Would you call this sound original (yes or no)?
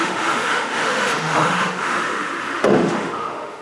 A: no